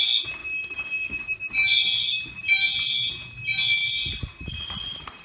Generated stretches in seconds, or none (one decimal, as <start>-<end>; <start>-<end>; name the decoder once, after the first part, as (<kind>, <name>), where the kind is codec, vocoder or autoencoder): none